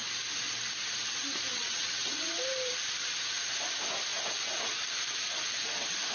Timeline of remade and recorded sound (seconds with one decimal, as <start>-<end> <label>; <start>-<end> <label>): 0.0-1.5 recorded; 1.5-2.3 remade; 2.3-6.1 recorded